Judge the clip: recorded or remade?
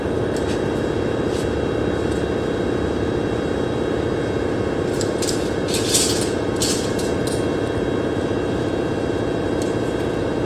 recorded